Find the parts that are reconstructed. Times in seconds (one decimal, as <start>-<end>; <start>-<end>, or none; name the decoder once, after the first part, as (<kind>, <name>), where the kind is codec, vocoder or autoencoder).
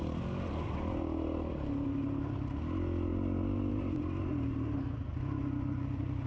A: none